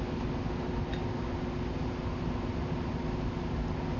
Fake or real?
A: real